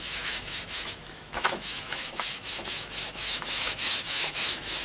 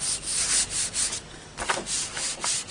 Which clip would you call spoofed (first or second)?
first